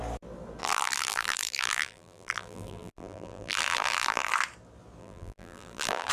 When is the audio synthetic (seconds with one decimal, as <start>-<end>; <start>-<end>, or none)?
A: 0.6-4.3; 5.0-6.1